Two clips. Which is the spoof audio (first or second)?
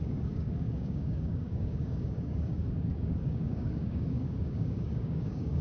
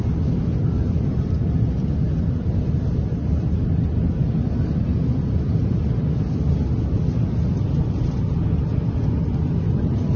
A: first